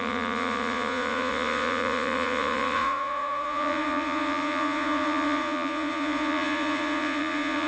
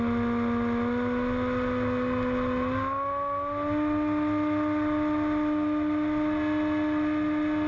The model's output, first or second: first